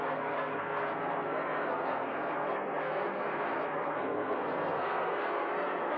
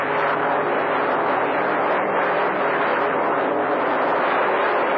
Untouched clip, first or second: second